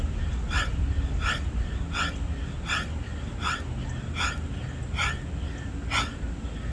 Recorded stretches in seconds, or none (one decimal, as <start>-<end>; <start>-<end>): 0.0-6.7